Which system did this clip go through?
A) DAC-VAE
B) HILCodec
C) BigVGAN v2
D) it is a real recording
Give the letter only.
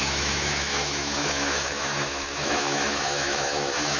A